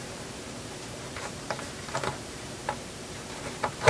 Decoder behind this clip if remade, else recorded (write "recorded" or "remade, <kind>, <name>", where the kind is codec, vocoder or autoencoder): remade, vocoder, BigVGAN v2